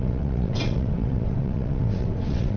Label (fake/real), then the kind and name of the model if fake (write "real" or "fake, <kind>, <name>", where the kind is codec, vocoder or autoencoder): fake, vocoder, WaveNeXt